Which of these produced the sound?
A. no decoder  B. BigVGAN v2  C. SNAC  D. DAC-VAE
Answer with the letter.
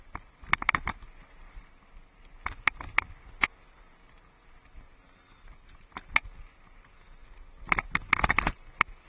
A